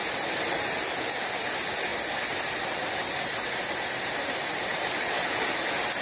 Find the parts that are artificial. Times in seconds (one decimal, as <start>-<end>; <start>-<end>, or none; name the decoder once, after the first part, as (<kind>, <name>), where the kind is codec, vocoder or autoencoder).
0.0-1.3 (vocoder, BigVGAN v2); 1.9-4.2; 4.7-5.4